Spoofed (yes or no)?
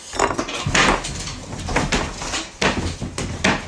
no